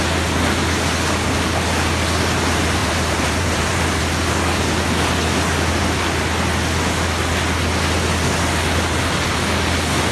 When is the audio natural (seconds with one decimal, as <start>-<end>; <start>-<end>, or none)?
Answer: 0.0-2.8; 4.0-10.1